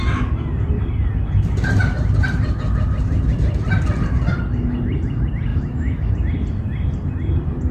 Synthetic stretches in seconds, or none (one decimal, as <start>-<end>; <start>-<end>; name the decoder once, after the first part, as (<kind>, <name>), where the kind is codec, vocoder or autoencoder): 5.5-6.1 (autoencoder, DAC-VAE)